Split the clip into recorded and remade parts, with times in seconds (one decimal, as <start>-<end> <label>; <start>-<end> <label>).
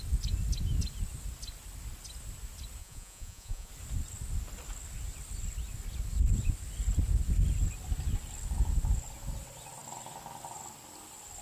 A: 0.0-2.8 recorded; 2.8-3.7 remade; 3.7-11.4 recorded